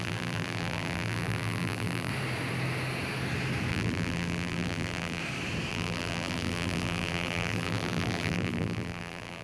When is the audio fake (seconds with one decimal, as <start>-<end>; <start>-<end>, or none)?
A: 0.0-2.1; 3.7-5.2; 5.7-9.4